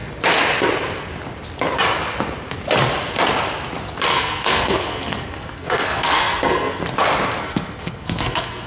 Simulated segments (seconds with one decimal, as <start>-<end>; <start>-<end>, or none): 4.1-6.8; 7.4-8.7